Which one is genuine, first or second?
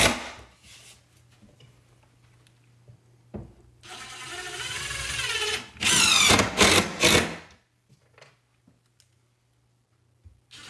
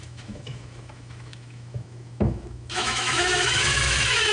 first